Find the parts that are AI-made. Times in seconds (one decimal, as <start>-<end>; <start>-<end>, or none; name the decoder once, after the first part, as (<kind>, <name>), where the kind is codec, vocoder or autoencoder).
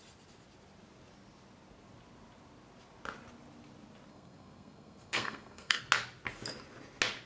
4.1-5.8 (codec, SNAC)